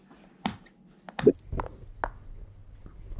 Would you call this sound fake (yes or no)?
no